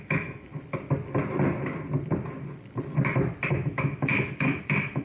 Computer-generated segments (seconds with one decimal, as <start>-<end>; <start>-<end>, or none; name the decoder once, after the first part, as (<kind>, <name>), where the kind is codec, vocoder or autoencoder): 0.0-0.5 (autoencoder, DAC-VAE); 3.5-5.0